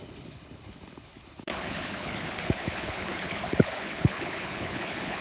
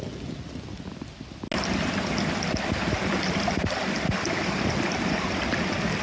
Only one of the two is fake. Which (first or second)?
first